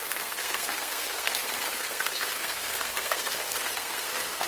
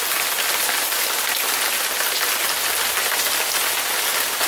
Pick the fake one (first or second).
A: first